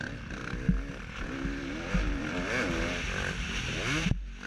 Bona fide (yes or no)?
yes